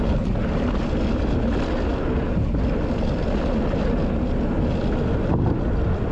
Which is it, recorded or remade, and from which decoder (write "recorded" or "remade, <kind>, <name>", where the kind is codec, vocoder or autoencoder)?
recorded